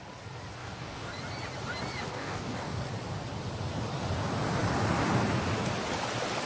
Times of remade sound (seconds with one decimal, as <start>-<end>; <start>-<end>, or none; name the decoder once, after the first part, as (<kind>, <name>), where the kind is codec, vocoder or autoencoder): 0.6-1.1 (codec, DAC); 2.1-2.8